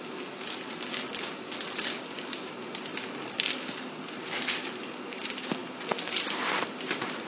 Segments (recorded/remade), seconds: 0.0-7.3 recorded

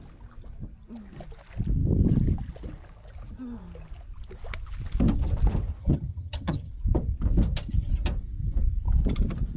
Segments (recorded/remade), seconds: 0.0-5.8 recorded; 5.8-6.7 remade; 6.7-9.6 recorded